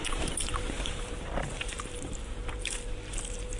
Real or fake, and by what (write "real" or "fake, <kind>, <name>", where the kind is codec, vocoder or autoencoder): fake, vocoder, BigVGAN v2